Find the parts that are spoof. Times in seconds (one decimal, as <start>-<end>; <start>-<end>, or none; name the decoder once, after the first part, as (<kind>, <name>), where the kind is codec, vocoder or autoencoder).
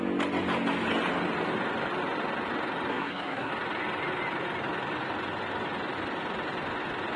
2.9-3.5 (codec, SNAC)